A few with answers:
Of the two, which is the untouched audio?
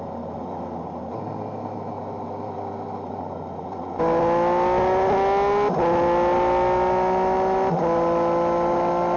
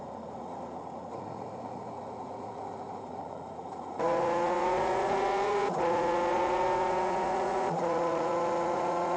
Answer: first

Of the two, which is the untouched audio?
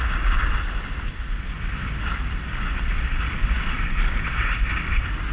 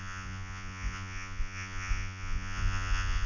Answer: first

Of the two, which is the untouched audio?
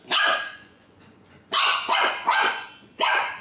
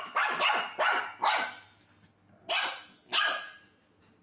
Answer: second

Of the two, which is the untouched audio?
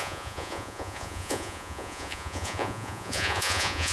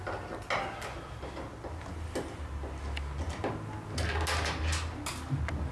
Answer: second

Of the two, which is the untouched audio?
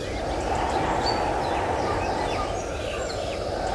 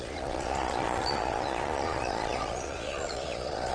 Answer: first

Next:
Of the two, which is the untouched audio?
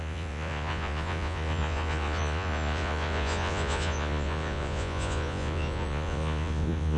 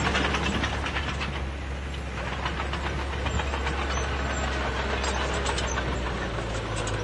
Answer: second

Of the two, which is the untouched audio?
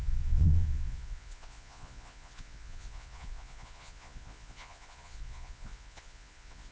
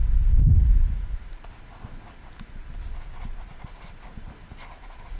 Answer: second